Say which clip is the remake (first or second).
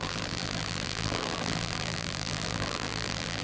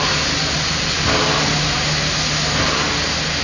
first